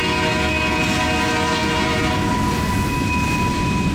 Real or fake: real